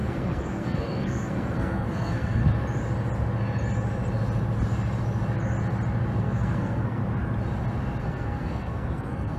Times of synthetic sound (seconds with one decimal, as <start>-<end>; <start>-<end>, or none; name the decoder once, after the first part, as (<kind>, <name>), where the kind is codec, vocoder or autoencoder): 0.0-2.4 (codec, SNAC); 6.2-7.0; 8.0-9.4